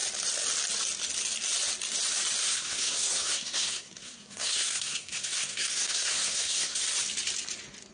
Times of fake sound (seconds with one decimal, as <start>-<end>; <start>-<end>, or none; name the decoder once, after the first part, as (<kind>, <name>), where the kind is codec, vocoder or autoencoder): 2.4-6.8 (codec, SNAC)